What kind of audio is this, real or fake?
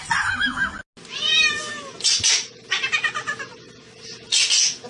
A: real